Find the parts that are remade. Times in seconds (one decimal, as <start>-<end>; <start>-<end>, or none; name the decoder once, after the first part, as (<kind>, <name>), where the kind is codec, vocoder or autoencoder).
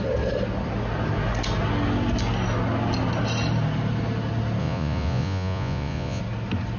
4.6-6.2 (vocoder, Vocos)